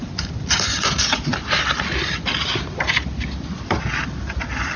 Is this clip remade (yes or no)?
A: no